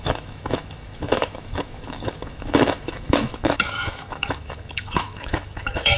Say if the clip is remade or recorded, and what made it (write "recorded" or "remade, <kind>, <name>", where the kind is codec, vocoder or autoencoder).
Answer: remade, autoencoder, DAC-VAE